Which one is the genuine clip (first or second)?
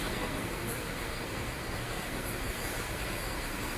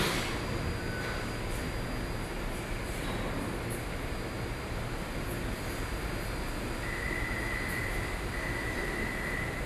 second